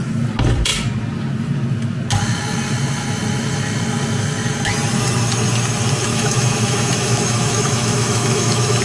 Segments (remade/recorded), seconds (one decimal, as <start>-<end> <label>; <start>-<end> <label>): 0.0-6.1 recorded; 6.1-8.8 remade